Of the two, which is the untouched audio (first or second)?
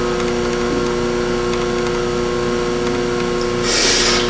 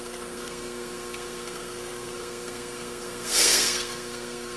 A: first